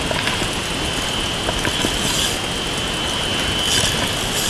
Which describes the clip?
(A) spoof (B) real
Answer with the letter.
B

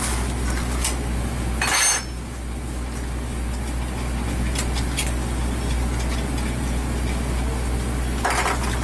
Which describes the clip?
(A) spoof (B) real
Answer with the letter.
B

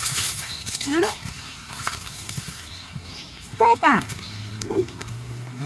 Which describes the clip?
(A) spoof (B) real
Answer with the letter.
A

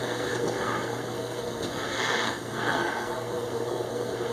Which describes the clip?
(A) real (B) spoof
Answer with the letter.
B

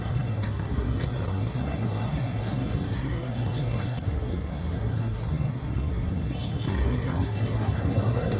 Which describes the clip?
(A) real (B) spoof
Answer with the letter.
B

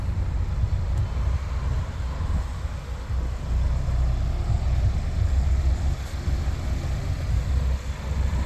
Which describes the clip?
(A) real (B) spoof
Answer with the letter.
A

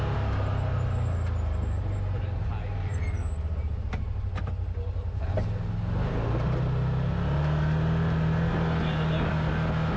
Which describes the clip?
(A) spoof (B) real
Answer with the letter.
B